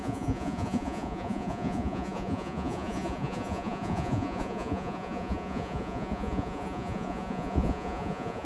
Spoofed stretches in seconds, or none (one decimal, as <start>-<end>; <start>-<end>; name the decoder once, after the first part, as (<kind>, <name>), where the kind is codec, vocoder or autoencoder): 0.0-8.4 (vocoder, Vocos)